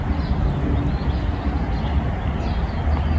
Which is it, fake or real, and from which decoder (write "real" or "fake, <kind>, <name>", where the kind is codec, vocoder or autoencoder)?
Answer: real